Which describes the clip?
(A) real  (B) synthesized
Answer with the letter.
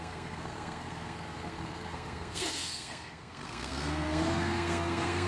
B